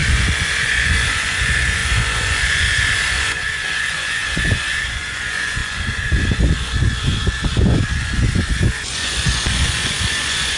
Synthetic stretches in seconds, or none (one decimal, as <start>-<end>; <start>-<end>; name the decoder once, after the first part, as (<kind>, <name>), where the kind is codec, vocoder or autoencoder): 0.0-10.6 (vocoder, Vocos)